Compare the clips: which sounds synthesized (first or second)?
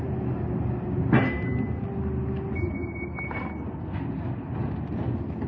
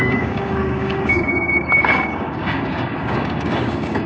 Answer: second